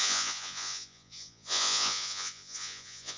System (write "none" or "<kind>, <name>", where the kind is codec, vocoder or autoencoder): vocoder, Vocos